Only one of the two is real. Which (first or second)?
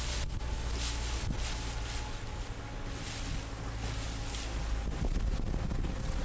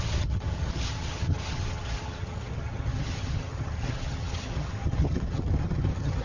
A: first